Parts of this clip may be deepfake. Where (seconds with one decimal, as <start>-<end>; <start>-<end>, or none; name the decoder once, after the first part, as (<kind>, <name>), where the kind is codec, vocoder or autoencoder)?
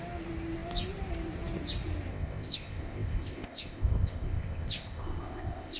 2.1-5.8 (codec, ZipCodec)